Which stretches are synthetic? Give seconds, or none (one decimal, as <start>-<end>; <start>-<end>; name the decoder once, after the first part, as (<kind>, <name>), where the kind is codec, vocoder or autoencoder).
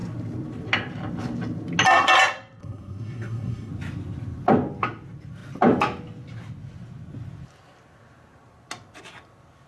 2.6-3.7 (codec, SNAC)